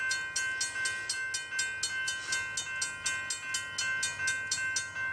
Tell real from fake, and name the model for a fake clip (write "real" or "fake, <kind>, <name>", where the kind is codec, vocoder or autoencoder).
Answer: real